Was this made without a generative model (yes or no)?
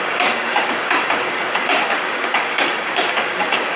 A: no